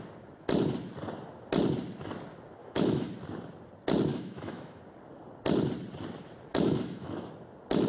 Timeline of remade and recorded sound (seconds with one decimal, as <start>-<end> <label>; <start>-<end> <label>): 0.0-2.6 recorded; 2.6-3.1 remade; 3.1-4.1 recorded; 4.1-4.8 remade; 4.8-6.5 recorded; 6.5-7.3 remade; 7.3-7.9 recorded